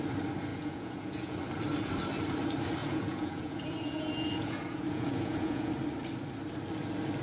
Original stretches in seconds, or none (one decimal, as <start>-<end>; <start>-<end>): 0.0-0.5; 1.3-2.8; 5.7-7.2

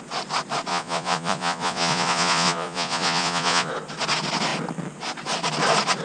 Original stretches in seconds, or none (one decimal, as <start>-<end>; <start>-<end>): 0.0-0.7; 3.7-6.0

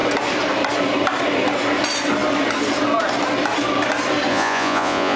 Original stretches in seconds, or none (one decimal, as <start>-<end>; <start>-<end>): 0.0-4.3

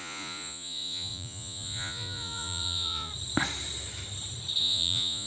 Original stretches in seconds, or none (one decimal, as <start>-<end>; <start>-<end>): 3.1-4.6

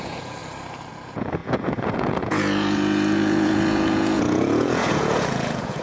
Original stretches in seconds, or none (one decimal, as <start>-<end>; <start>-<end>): 0.4-0.9

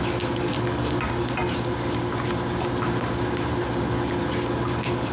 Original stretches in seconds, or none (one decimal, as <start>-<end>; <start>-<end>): 0.0-5.1